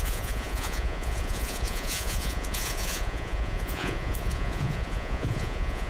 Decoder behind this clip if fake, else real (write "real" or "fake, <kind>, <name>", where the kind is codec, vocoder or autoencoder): fake, vocoder, Vocos